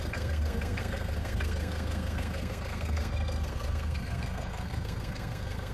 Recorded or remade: remade